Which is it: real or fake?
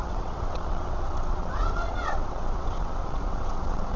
fake